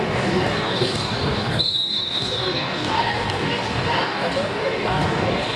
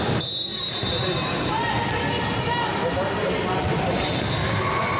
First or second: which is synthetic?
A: first